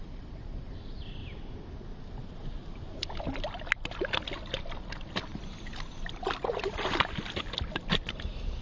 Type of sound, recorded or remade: recorded